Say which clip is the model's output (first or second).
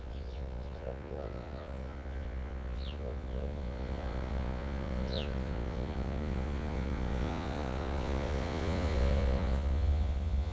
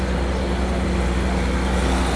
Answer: first